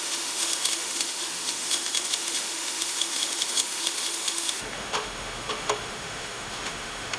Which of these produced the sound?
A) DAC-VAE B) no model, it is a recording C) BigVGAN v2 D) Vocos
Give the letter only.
A